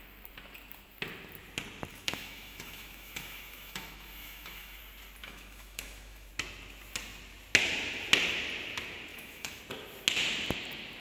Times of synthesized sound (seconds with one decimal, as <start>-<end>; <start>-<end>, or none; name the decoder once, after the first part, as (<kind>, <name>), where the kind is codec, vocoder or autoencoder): 1.9-4.8 (autoencoder, DAC-VAE); 5.2-6.3; 9.1-9.6